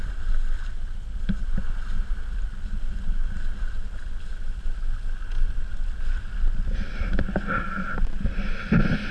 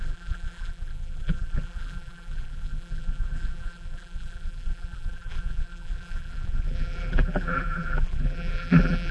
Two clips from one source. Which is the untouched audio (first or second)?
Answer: first